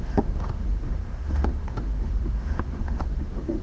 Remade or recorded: remade